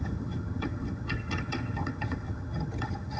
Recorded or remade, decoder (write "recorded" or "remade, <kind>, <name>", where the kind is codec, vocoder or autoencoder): remade, vocoder, HiFi-GAN